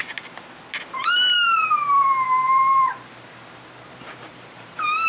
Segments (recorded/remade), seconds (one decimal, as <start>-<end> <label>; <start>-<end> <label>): 0.0-1.2 recorded; 1.2-5.1 remade